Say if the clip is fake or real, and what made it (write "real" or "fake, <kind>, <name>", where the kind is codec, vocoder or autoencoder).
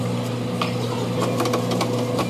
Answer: real